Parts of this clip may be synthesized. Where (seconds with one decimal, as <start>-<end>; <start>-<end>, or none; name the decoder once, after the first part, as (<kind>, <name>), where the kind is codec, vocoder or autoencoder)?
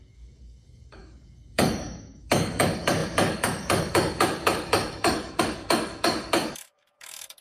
0.0-7.4 (codec, DAC)